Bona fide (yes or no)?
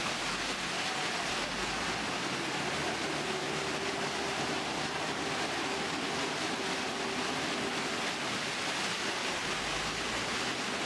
yes